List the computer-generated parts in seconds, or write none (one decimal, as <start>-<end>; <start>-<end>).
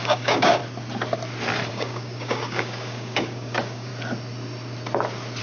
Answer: 0.0-0.6; 1.7-3.9